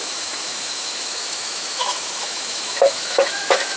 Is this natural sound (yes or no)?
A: no